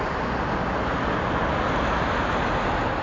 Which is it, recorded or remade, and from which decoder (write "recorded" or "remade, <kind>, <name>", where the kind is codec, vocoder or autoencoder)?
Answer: recorded